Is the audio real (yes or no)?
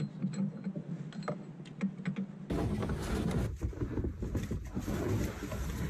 yes